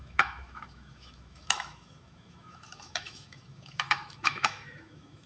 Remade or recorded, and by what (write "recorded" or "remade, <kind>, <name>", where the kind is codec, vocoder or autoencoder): remade, autoencoder, DAC-VAE